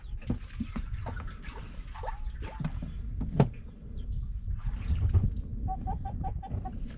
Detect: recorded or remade recorded